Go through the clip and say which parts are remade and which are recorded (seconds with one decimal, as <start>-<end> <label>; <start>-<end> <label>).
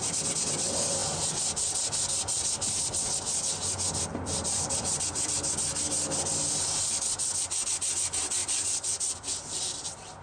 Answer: 0.0-4.1 recorded; 4.1-5.8 remade; 5.8-8.4 recorded; 8.4-10.2 remade